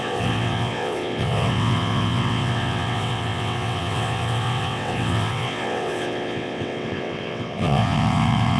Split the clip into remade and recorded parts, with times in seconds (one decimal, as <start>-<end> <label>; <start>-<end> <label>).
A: 0.0-8.6 remade